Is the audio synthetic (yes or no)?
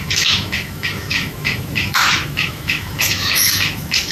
yes